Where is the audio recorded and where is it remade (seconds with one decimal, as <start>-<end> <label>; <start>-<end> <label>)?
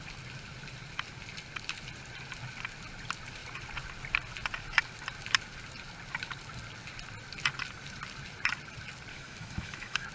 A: 0.0-9.1 recorded; 9.1-10.1 remade